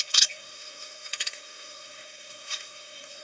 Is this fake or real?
fake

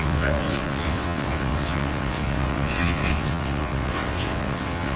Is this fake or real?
fake